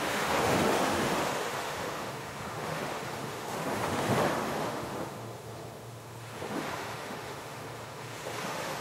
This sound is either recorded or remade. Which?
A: remade